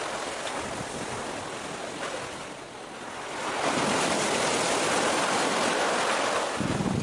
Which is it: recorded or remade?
recorded